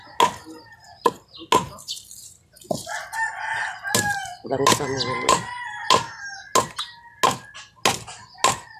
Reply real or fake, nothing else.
real